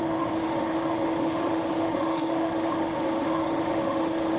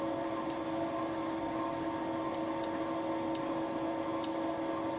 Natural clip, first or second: second